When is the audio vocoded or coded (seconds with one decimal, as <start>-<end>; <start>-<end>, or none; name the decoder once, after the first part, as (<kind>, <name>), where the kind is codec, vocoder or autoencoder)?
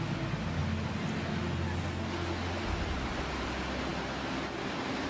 none